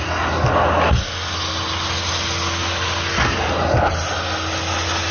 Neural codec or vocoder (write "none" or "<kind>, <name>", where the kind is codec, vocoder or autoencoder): none